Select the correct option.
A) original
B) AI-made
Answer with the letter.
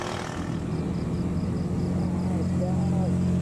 A